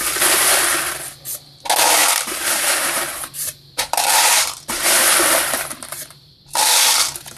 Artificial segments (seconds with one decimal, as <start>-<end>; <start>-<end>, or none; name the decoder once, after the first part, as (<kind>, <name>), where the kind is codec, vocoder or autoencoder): 2.0-6.4 (vocoder, BigVGAN v2)